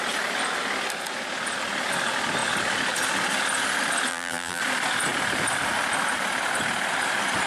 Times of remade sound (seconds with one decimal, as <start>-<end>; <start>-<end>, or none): 4.1-4.6